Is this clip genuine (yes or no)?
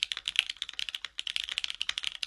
yes